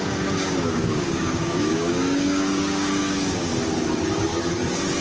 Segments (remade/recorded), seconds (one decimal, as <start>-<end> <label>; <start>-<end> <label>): 0.0-3.5 remade; 3.5-5.0 recorded

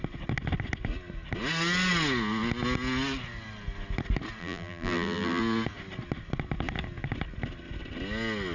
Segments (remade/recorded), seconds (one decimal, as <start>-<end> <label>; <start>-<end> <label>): 0.0-4.4 recorded; 4.4-5.4 remade; 5.4-8.5 recorded